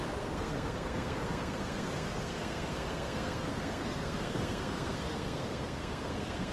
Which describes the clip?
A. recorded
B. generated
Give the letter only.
B